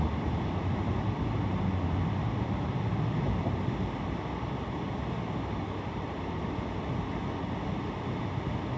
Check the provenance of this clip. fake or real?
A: real